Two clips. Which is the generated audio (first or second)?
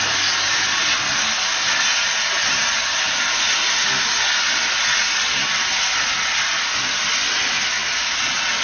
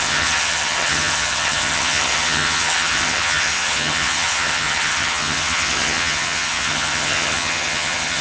second